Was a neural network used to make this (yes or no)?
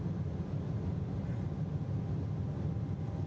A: no